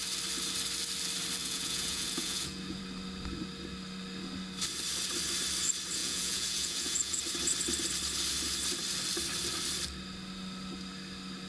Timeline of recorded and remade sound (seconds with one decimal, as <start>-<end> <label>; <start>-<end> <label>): 0.0-1.4 recorded; 1.4-2.8 remade; 2.8-6.0 recorded; 6.0-7.2 remade; 7.2-11.5 recorded